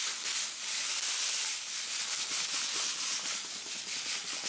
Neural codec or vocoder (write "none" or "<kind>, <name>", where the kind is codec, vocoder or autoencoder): none